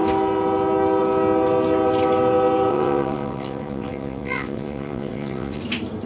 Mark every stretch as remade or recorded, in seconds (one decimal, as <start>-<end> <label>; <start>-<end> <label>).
0.0-2.7 recorded; 2.7-5.6 remade; 5.6-6.1 recorded